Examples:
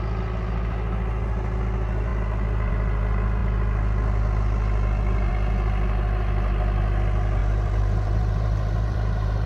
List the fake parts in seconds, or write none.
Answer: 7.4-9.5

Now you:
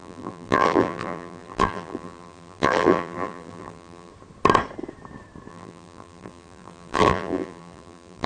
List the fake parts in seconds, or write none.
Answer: 0.0-4.1; 5.5-8.3

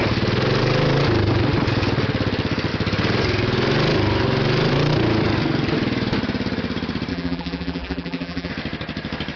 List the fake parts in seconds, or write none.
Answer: 7.1-8.5

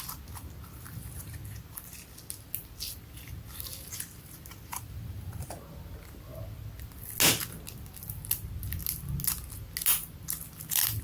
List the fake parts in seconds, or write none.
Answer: 4.7-5.5

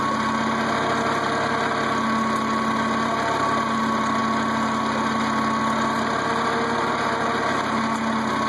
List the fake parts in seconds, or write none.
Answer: none

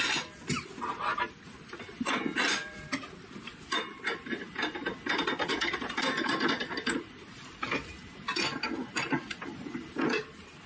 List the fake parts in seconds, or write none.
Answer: 0.0-4.6; 5.2-10.7